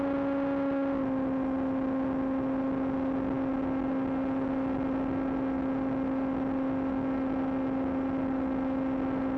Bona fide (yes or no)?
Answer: yes